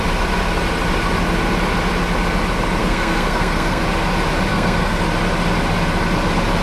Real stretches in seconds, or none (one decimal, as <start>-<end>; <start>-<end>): 0.0-2.8; 3.8-4.5; 5.0-6.6